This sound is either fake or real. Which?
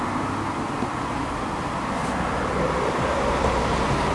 real